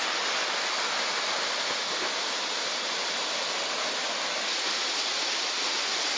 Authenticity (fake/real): real